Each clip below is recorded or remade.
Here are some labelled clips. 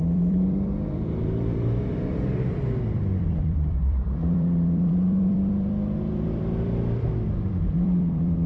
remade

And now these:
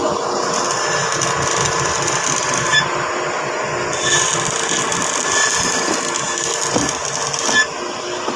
recorded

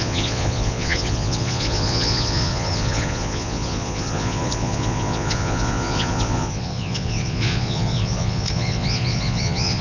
remade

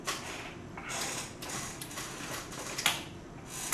recorded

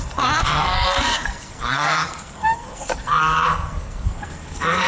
remade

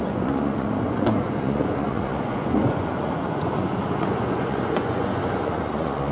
remade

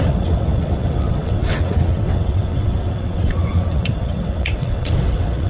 remade